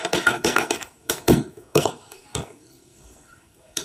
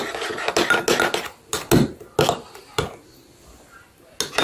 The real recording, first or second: second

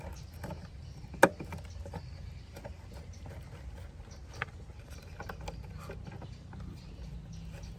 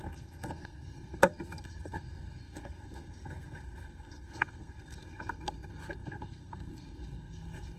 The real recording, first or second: first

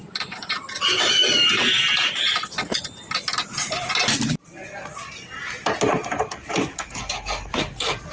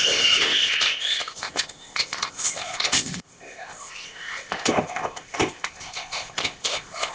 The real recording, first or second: first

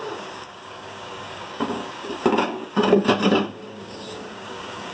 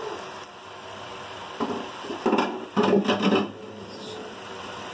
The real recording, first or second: second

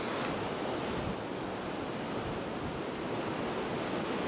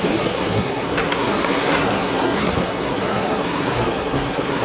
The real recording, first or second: first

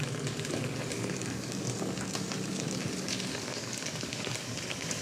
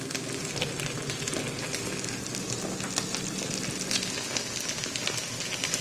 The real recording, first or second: second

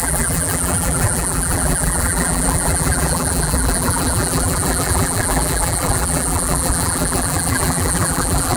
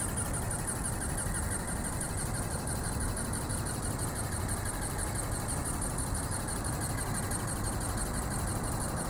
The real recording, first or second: second